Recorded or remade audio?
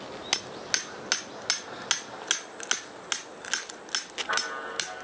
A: recorded